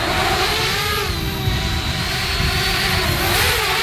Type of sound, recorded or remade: recorded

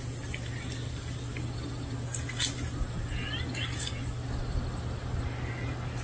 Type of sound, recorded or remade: recorded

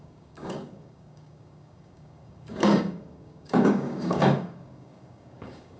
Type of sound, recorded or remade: remade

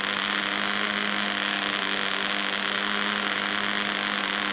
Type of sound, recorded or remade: recorded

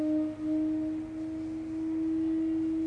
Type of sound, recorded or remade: recorded